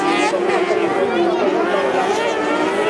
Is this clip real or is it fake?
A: real